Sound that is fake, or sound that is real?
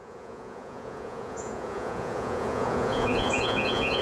fake